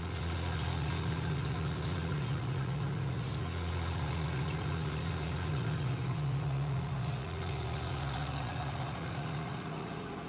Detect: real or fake fake